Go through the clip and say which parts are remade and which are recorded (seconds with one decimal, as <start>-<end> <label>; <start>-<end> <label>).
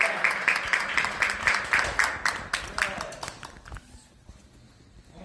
0.0-5.2 recorded